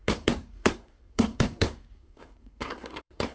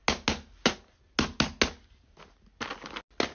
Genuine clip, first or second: second